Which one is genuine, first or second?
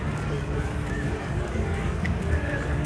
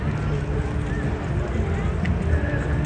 second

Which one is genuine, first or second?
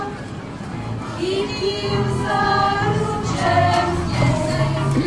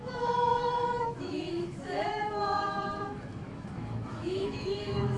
first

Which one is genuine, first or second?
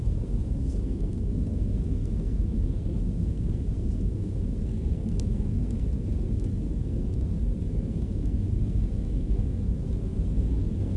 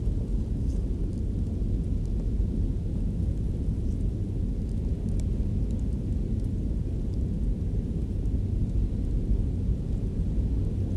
second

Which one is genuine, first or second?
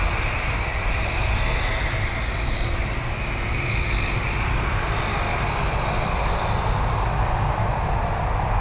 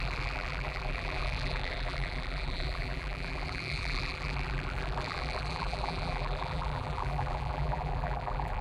first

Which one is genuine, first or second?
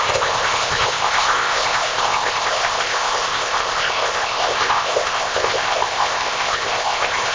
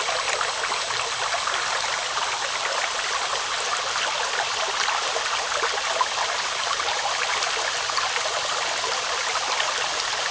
second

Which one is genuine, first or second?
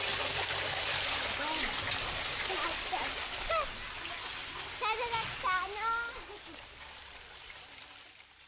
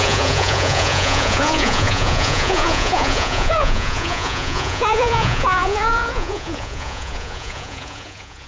first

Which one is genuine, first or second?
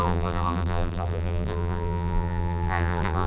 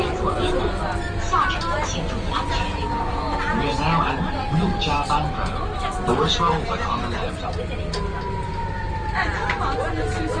second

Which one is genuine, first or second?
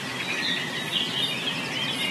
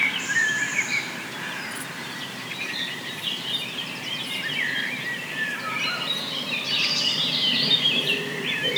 first